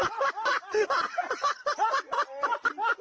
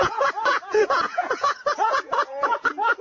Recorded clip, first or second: first